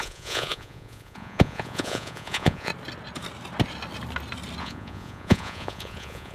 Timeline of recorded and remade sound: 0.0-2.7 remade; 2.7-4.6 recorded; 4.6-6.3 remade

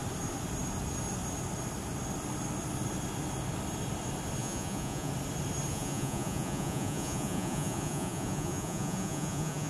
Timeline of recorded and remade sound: 0.0-4.4 recorded; 4.4-5.1 remade; 5.1-5.7 recorded; 5.7-9.7 remade

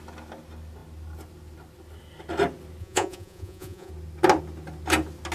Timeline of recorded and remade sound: 0.0-2.8 recorded; 2.8-3.9 remade; 3.9-5.3 recorded

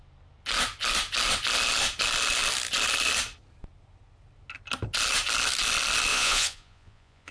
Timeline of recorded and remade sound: 0.0-6.1 recorded; 6.1-7.3 remade

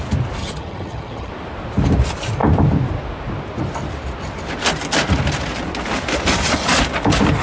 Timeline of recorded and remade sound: 0.0-0.4 recorded; 0.4-1.3 remade; 1.3-7.4 recorded